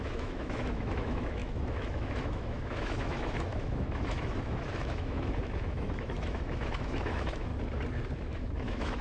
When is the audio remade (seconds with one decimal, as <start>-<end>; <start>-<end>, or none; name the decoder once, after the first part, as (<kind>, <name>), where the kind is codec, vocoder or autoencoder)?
0.0-7.5 (autoencoder, DAC-VAE); 8.3-9.0